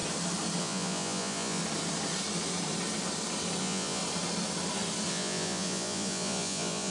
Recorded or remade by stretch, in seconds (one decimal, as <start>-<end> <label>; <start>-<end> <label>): 0.0-0.6 recorded; 0.6-1.6 remade; 1.6-3.6 recorded; 3.6-4.0 remade; 4.0-5.1 recorded; 5.1-6.9 remade